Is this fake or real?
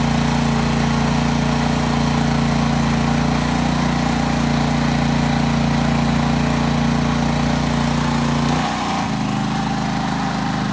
real